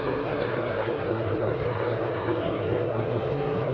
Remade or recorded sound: remade